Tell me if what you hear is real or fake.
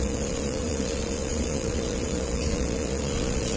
fake